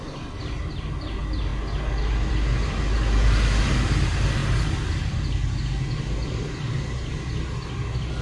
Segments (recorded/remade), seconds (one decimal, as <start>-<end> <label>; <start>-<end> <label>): 0.0-8.2 recorded